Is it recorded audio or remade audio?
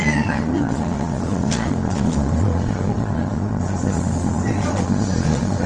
remade